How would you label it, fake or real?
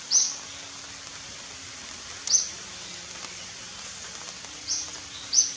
real